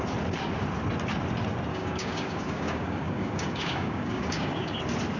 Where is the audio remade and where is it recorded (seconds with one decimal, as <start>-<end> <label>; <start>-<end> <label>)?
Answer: 0.0-1.7 recorded; 1.7-4.8 remade; 4.8-5.2 recorded